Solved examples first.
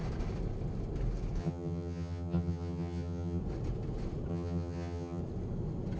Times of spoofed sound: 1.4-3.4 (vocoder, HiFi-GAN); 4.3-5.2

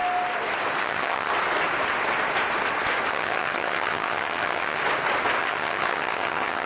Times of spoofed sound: 0.8-1.3 (vocoder, HiFi-GAN); 3.1-4.8; 5.4-6.7

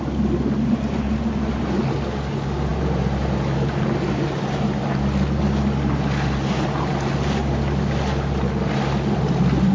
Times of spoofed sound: none

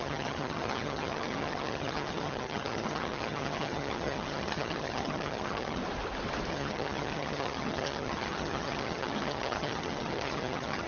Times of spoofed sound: 0.0-5.8 (vocoder, HiFi-GAN); 6.5-10.9

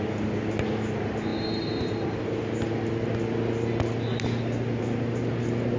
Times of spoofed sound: none

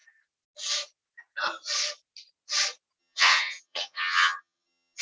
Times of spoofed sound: 3.0-5.0 (vocoder, HiFi-GAN)

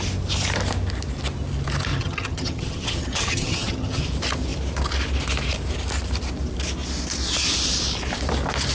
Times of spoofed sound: 1.9-4.0 (vocoder, HiFi-GAN)

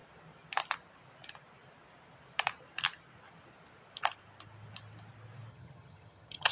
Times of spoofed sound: 5.5-6.5 (vocoder, HiFi-GAN)